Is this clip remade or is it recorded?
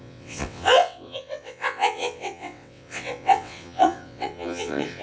remade